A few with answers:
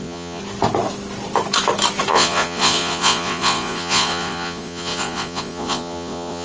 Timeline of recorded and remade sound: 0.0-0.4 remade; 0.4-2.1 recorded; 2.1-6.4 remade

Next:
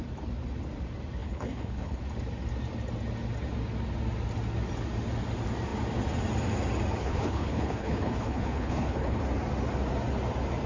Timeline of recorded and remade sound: 0.0-1.2 recorded; 1.2-2.0 remade; 2.0-7.0 recorded; 7.0-9.2 remade; 9.2-10.7 recorded

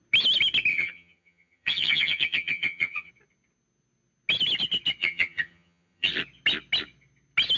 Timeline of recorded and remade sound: 0.0-0.7 recorded; 0.7-3.1 remade; 3.1-5.0 recorded; 5.0-6.1 remade; 6.1-7.6 recorded

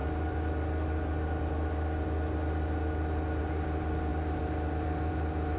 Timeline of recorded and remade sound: 0.0-5.6 recorded

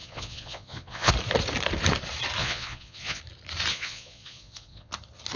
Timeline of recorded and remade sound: 0.0-1.1 remade; 1.1-2.4 recorded; 2.4-3.2 remade; 3.2-3.7 recorded; 3.7-4.9 remade; 4.9-5.4 recorded

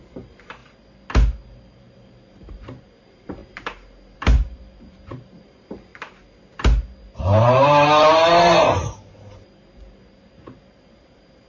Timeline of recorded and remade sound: 0.0-0.6 remade; 0.6-1.4 recorded; 1.4-5.9 remade; 5.9-7.2 recorded; 7.2-11.5 remade

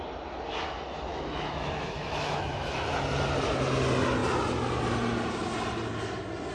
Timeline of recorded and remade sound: 0.0-1.1 recorded; 1.1-2.8 remade; 2.8-6.5 recorded

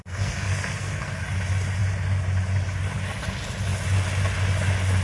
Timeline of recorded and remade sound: 0.0-1.2 remade; 1.2-5.0 recorded